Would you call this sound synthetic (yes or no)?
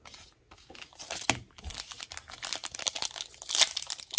no